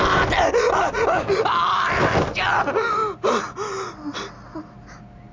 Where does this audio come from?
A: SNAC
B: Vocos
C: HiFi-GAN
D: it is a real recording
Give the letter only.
D